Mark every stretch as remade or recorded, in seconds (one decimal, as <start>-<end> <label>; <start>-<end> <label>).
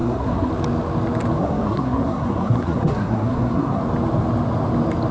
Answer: 0.0-0.5 remade; 0.5-1.4 recorded; 1.4-3.8 remade; 3.8-5.1 recorded